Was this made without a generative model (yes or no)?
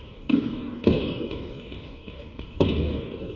no